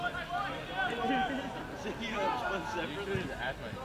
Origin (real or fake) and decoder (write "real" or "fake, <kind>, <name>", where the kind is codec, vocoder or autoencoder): real